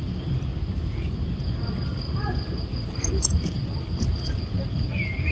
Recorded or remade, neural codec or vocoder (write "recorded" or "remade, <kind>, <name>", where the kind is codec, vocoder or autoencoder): recorded